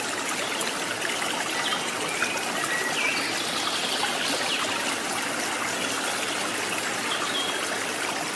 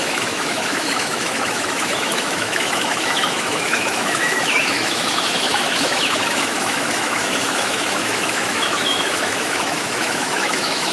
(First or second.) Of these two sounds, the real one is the first